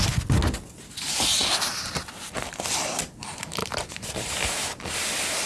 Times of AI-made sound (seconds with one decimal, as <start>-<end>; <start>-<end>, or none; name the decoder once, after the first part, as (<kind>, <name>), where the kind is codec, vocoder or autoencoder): 3.6-4.8 (vocoder, BigVGAN v2)